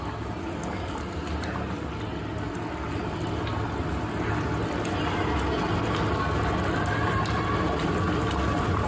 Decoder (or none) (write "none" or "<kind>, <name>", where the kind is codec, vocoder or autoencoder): none